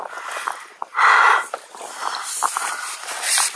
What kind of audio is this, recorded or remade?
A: recorded